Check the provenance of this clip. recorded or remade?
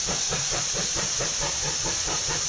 remade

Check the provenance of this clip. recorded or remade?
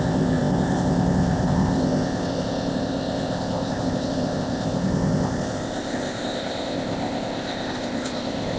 remade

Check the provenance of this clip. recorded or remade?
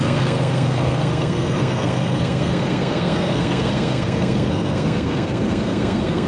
remade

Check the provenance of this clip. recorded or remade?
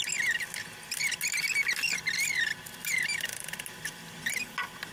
recorded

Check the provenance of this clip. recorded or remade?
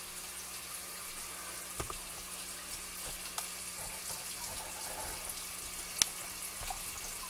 recorded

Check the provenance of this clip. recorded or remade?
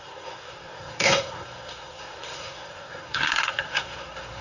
remade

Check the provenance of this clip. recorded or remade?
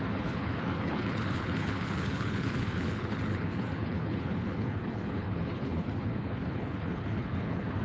remade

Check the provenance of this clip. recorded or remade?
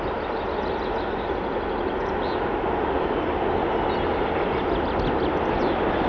recorded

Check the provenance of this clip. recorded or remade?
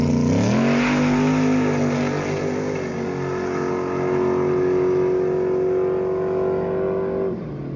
recorded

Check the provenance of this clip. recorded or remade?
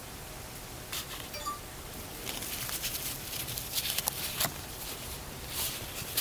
remade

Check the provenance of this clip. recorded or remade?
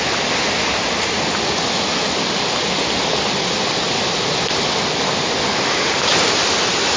recorded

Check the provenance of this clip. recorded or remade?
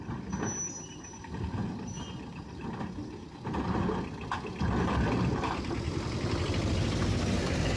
recorded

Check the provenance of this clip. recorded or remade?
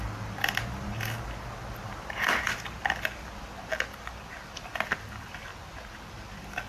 recorded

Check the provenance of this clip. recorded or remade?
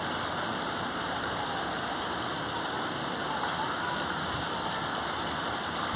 recorded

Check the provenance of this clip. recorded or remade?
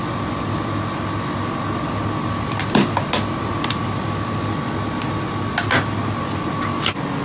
recorded